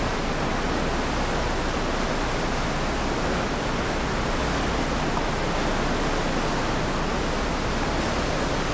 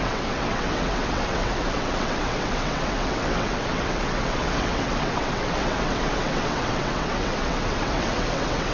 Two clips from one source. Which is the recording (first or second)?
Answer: first